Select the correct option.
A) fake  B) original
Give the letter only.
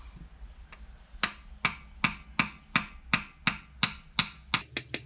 B